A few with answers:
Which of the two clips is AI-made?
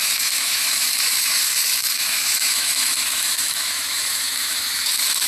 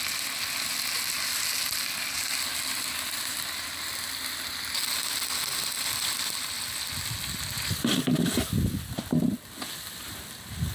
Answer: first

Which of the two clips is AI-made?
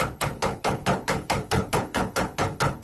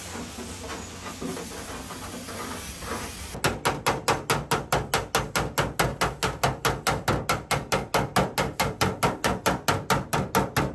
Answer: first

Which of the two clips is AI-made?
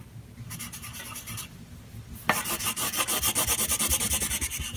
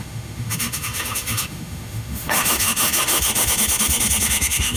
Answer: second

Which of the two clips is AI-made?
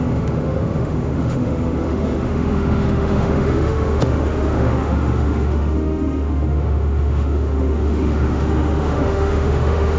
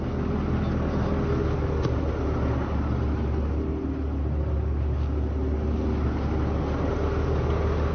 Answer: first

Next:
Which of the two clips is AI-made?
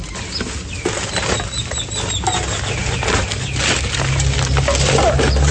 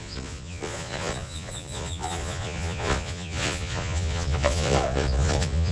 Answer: second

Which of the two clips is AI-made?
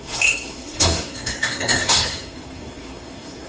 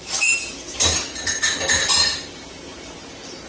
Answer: first